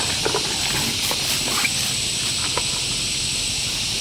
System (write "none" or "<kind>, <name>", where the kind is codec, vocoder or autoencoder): none